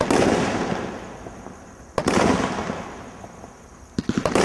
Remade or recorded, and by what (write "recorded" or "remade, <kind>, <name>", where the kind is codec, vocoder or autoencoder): recorded